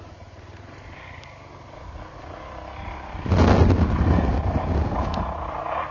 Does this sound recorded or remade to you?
recorded